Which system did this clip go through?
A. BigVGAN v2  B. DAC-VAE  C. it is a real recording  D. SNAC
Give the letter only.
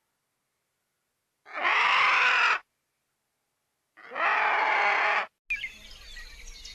C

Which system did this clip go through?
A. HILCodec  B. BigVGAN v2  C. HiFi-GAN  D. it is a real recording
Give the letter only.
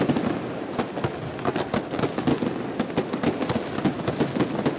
D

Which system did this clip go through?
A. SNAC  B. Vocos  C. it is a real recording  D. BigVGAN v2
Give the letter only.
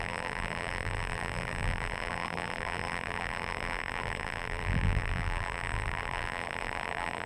D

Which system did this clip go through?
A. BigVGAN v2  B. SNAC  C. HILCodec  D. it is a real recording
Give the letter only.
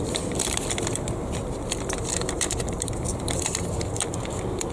A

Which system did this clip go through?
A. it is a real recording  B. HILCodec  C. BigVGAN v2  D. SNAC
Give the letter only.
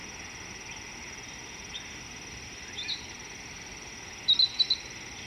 A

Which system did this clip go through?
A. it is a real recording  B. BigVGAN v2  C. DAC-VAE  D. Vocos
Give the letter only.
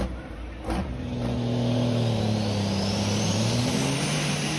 B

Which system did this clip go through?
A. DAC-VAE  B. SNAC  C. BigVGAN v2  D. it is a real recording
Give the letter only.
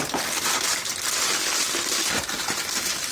C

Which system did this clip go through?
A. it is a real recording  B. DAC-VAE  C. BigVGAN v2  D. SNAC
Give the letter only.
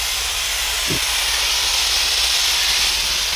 A